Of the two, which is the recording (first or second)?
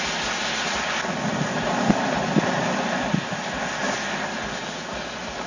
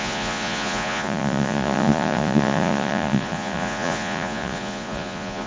first